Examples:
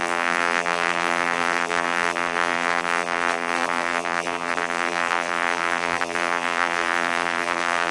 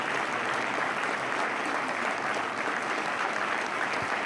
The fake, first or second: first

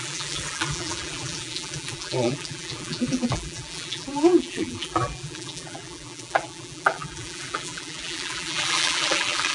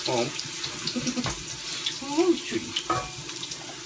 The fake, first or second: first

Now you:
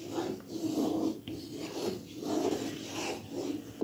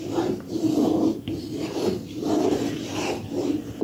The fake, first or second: second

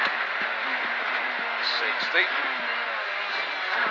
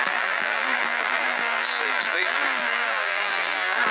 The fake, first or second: second